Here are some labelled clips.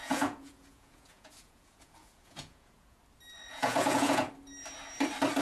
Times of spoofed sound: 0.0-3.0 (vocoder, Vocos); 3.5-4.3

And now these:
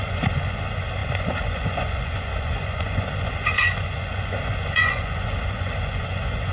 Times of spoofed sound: 0.0-6.5 (vocoder, Vocos)

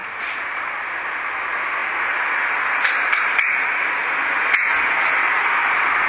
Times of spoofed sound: none